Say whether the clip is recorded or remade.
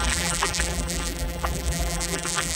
remade